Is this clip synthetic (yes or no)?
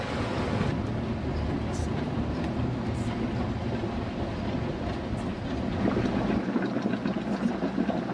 no